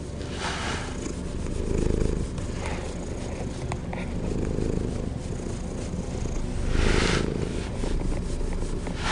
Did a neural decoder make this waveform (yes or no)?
no